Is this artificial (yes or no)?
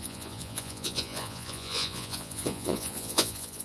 yes